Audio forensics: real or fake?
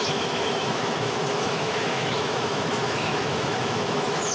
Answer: fake